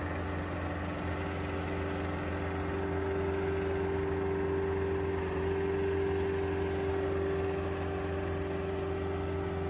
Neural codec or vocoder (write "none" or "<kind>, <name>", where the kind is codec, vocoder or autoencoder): none